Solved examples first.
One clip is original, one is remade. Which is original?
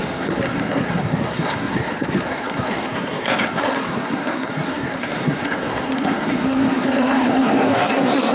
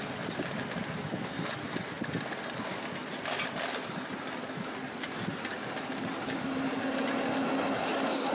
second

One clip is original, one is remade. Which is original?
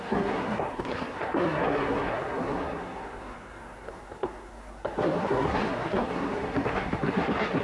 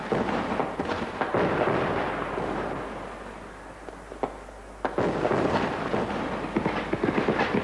second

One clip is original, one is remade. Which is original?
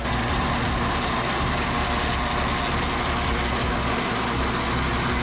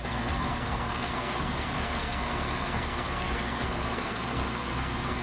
first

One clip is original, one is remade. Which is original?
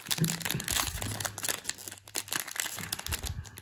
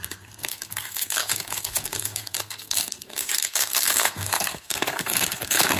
first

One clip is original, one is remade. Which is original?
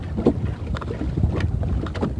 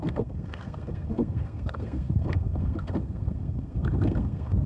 first